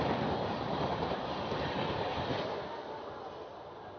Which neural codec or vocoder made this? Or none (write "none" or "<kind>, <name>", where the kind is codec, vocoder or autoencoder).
none